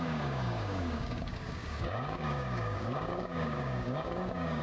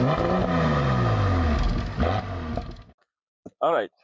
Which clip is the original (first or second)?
second